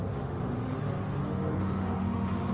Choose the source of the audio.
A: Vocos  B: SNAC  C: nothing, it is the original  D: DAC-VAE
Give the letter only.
D